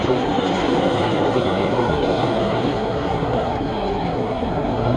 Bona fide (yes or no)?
no